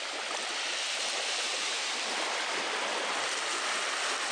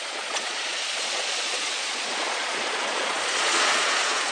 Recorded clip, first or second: first